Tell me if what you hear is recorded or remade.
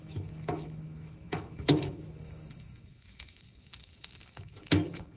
remade